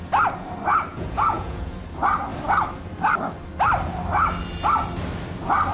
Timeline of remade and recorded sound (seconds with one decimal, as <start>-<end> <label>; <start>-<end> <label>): 0.0-0.9 recorded; 0.9-1.8 remade; 1.8-5.7 recorded